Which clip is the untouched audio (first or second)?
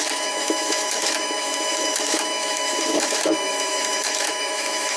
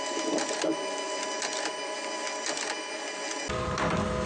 second